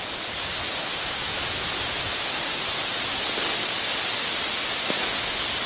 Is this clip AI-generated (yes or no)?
no